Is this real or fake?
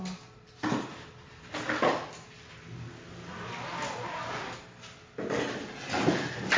real